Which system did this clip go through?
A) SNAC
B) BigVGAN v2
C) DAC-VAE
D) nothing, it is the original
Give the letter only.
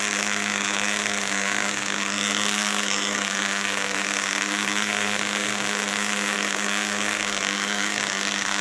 A